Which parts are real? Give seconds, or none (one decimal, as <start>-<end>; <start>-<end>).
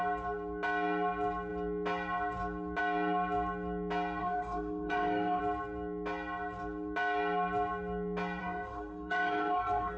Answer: 0.0-4.2; 5.4-8.4